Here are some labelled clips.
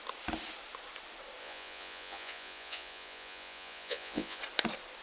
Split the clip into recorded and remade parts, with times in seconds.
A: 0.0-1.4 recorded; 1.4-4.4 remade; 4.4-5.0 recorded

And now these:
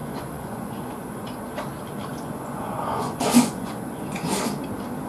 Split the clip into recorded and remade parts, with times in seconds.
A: 0.0-1.5 remade; 1.5-2.1 recorded; 2.1-4.4 remade; 4.4-5.1 recorded

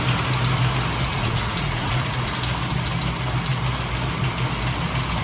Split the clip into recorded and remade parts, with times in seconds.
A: 0.0-1.1 recorded; 1.1-2.3 remade; 2.3-5.2 recorded

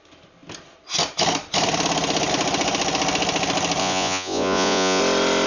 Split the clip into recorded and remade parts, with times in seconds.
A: 0.0-3.8 recorded; 3.8-5.0 remade; 5.0-5.5 recorded

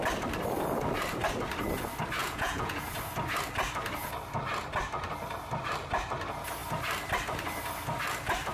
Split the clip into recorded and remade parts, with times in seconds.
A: 0.0-2.2 recorded; 2.2-2.8 remade; 2.8-8.5 recorded